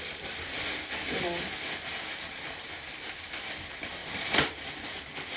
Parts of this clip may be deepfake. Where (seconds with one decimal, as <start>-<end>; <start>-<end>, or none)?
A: 4.0-5.0